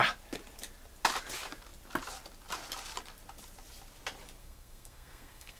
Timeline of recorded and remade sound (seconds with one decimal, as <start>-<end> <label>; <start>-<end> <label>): 0.0-4.4 recorded; 4.4-5.6 remade